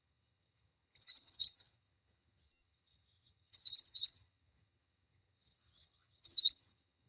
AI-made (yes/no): yes